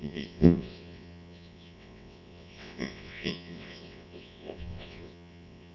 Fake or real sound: fake